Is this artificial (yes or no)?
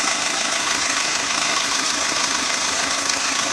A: yes